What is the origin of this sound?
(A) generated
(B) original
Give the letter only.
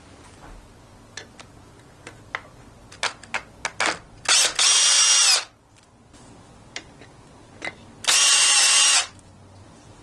B